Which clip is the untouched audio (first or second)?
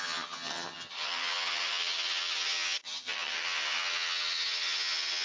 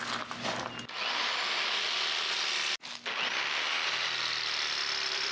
second